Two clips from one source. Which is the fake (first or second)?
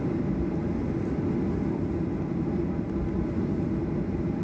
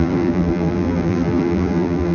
second